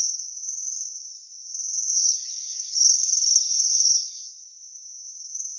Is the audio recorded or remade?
remade